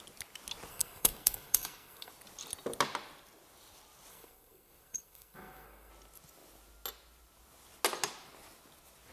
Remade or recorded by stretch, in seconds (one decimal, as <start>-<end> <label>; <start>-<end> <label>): 0.0-0.7 recorded; 0.7-2.1 remade; 2.1-4.1 recorded; 4.1-5.9 remade; 5.9-9.1 recorded